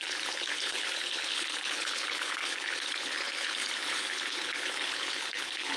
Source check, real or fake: fake